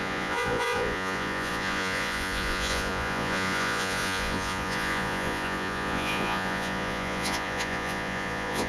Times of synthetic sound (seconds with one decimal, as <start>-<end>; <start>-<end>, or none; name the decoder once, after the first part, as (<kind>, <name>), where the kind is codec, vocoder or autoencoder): 0.0-8.7 (vocoder, Vocos)